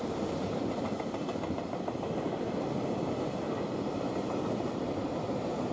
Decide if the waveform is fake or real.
real